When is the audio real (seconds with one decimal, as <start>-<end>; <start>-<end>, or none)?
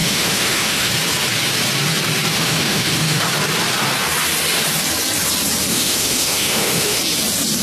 0.9-2.3; 3.2-5.7; 7.0-7.6